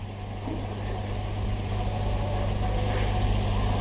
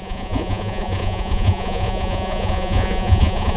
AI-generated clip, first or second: second